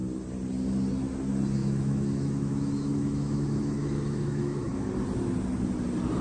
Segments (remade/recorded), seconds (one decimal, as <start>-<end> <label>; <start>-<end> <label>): 0.0-1.6 recorded; 1.6-4.9 remade; 4.9-6.2 recorded